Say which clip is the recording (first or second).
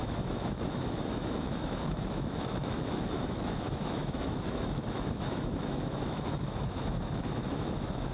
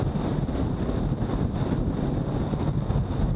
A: second